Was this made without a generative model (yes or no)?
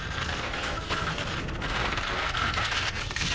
no